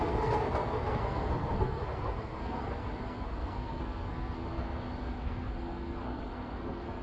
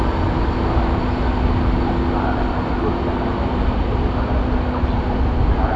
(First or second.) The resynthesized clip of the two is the first